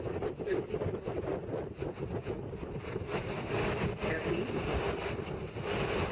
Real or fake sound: real